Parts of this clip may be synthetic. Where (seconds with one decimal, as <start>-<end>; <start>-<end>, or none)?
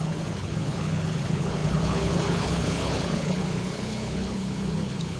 0.0-5.2